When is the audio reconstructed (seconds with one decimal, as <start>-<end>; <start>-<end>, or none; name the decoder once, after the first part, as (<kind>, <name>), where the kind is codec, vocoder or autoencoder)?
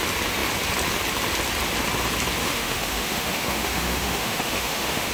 2.4-5.1 (autoencoder, DAC-VAE)